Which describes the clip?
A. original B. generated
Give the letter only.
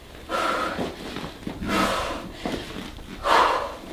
A